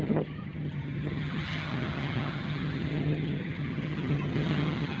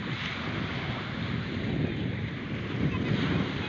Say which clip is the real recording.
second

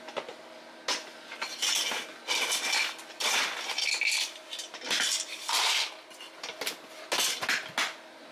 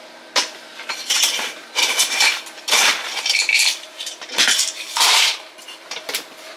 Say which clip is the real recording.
first